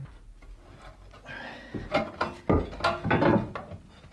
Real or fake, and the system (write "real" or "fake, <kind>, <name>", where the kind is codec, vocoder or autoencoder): real